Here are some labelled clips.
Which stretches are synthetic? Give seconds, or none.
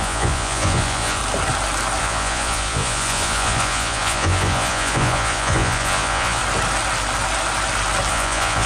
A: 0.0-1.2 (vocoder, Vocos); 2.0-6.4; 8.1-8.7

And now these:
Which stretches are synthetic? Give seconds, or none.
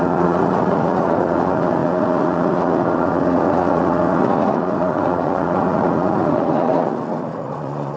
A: 0.0-8.0 (vocoder, Vocos)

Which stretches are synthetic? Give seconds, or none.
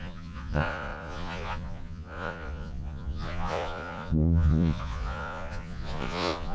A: 0.0-6.5 (vocoder, Vocos)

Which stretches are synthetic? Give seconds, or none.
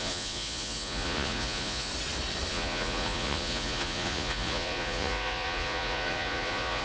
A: 0.0-1.9 (vocoder, Vocos); 2.5-6.8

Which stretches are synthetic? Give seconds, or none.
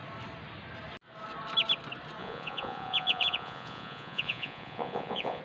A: 2.2-5.4 (vocoder, Vocos)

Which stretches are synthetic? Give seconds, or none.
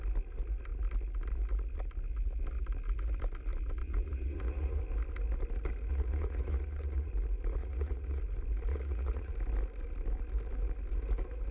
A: 3.8-4.8 (vocoder, Vocos); 5.9-7.1; 7.6-8.2; 8.7-9.3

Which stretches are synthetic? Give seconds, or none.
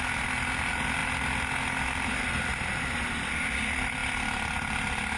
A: none